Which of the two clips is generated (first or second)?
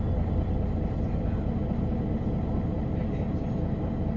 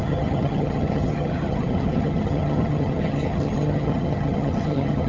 second